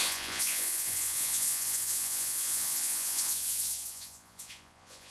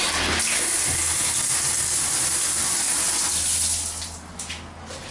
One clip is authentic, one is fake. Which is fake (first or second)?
first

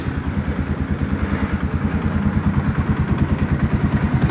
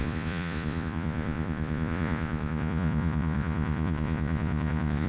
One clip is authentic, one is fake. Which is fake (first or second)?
second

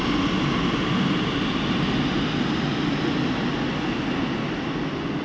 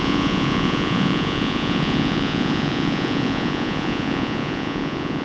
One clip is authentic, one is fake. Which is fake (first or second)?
second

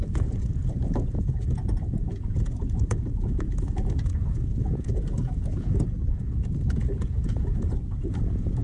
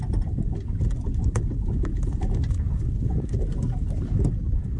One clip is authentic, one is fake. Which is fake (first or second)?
first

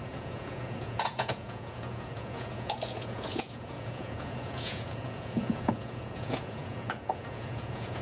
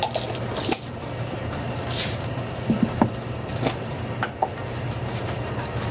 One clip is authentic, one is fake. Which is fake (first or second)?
first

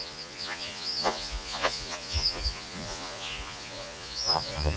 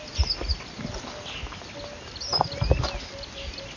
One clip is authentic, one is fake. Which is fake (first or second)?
first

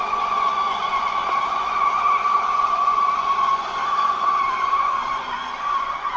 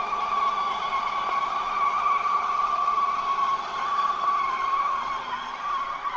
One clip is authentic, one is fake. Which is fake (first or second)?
first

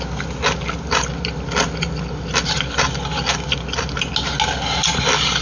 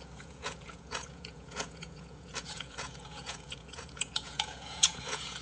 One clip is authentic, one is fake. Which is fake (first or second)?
second